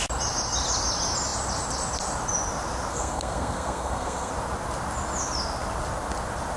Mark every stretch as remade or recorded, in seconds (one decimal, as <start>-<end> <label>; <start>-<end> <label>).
0.0-2.9 recorded; 2.9-4.3 remade; 4.3-6.6 recorded

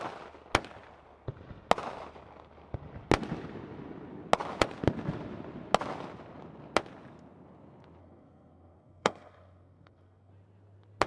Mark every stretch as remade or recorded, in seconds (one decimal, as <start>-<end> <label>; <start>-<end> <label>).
0.0-8.0 recorded; 8.0-10.3 remade; 10.3-11.1 recorded

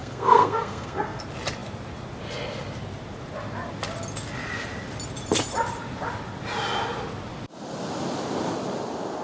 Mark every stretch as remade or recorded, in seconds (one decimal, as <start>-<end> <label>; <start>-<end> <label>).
0.0-1.2 remade; 1.2-9.2 recorded

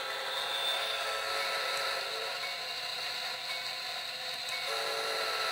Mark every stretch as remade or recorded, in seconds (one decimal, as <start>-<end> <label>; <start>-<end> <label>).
0.0-0.8 recorded; 0.8-1.4 remade; 1.4-5.5 recorded

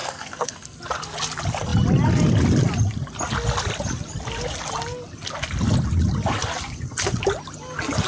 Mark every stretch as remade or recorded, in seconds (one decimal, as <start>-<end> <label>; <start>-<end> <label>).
0.0-0.8 remade; 0.8-8.1 recorded